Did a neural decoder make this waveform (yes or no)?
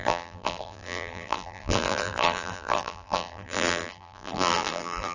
yes